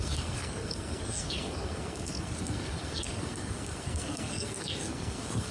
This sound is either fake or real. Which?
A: fake